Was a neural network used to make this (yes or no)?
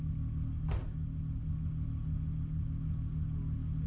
no